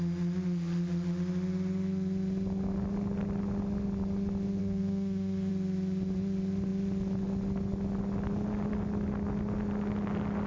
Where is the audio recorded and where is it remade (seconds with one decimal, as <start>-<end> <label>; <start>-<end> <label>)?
0.0-4.6 recorded; 4.6-5.5 remade; 5.5-10.5 recorded